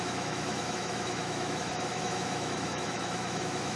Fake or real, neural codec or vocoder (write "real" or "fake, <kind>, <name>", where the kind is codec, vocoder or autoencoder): fake, autoencoder, DAC-VAE